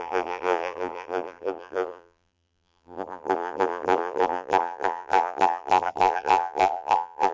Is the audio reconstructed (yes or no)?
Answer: yes